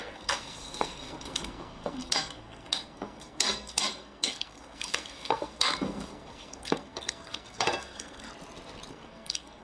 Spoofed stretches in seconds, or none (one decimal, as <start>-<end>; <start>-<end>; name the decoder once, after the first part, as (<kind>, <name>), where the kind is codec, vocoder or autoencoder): 0.0-8.3 (codec, SNAC); 8.9-9.6